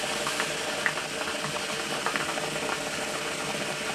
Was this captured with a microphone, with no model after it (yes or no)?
yes